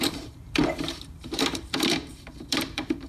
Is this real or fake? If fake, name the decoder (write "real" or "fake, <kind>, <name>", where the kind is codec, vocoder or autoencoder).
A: fake, vocoder, BigVGAN v2